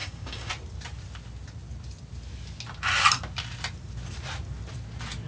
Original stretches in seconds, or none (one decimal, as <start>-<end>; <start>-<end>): 0.5-5.3